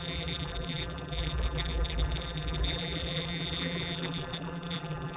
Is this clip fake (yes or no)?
yes